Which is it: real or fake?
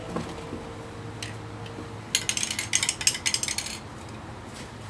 real